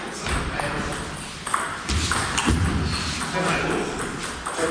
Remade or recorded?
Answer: recorded